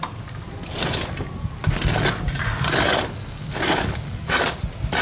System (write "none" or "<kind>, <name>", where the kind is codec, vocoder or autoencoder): none